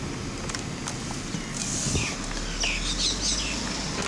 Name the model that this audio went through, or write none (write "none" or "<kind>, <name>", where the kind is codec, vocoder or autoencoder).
none